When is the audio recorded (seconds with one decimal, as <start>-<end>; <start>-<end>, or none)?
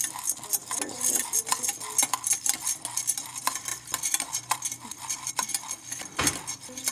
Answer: 0.0-3.7; 5.3-6.9